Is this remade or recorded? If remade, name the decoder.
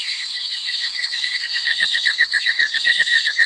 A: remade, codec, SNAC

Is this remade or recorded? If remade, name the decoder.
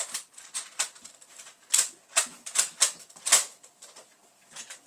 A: recorded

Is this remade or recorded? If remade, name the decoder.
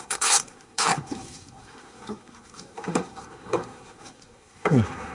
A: remade, codec, SNAC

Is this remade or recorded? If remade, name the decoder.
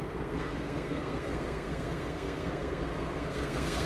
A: remade, codec, SNAC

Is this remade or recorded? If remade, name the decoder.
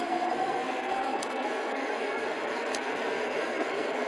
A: remade, codec, SNAC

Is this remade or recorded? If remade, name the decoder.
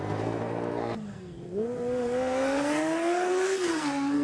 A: remade, codec, SNAC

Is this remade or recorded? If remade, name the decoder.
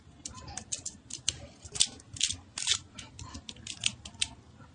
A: recorded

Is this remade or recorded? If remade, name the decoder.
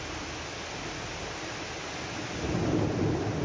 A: recorded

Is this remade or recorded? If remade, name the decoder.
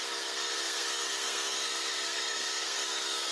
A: remade, codec, SNAC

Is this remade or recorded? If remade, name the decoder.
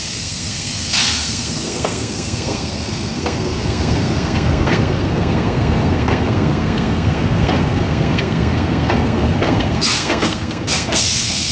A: remade, codec, SNAC